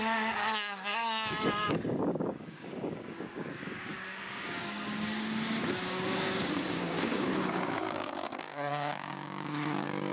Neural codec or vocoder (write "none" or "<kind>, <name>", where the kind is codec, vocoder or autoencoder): codec, DAC